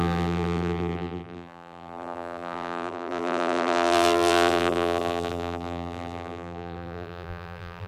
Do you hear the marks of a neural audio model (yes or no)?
yes